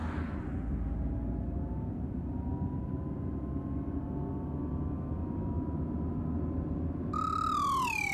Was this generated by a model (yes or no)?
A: no